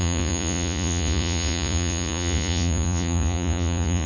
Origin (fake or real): fake